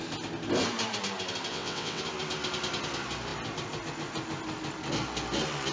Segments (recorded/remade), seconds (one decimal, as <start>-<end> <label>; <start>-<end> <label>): 0.0-1.5 recorded; 1.5-2.0 remade; 2.0-5.7 recorded